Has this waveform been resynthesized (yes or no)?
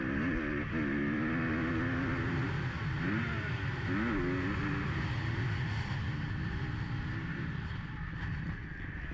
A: no